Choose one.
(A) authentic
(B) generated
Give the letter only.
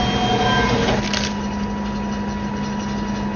A